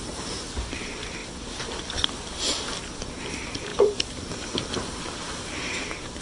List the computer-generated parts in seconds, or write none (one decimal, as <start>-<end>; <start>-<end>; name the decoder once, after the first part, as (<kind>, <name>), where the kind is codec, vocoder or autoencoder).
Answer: 0.0-1.2 (vocoder, BigVGAN v2); 3.3-6.2